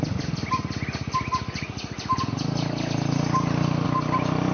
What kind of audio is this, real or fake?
real